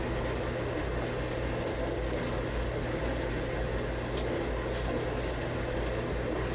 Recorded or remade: recorded